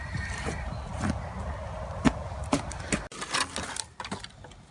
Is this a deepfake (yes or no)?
no